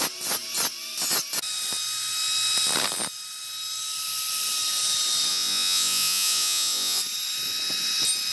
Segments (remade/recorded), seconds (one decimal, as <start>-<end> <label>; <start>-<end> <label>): 0.0-5.3 recorded; 5.3-7.0 remade; 7.0-8.3 recorded